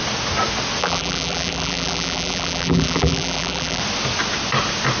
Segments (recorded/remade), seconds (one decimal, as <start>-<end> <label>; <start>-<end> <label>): 0.0-0.8 recorded; 0.8-3.8 remade; 3.8-5.0 recorded